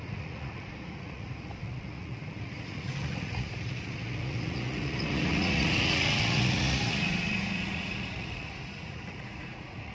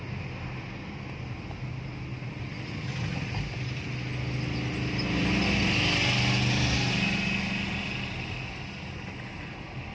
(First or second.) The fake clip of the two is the first